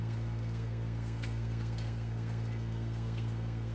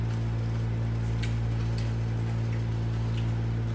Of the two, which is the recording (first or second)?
second